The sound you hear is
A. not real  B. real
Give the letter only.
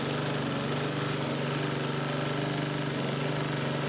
B